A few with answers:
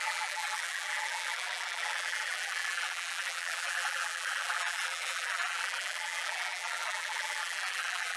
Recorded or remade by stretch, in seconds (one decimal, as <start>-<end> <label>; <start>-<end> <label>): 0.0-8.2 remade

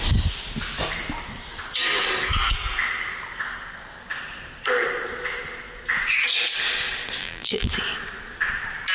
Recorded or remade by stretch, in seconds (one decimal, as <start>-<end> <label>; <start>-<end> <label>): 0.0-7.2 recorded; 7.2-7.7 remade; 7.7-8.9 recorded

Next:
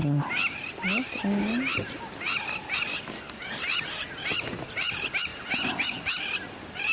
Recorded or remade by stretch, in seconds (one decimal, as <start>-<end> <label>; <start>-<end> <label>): 0.0-6.9 recorded

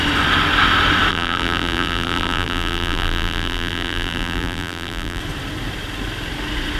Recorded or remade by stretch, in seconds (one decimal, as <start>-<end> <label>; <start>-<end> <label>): 0.0-1.1 recorded; 1.1-5.2 remade; 5.2-6.8 recorded

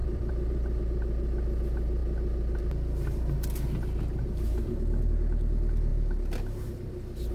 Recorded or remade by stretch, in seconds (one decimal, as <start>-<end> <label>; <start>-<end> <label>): 0.0-0.8 remade; 0.8-7.3 recorded